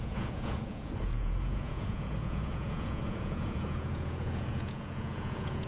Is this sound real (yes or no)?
no